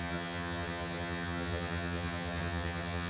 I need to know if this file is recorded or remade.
remade